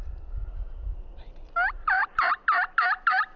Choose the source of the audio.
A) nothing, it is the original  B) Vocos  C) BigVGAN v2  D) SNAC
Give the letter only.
A